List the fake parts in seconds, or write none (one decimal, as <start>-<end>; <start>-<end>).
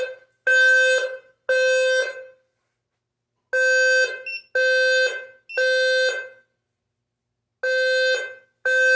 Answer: none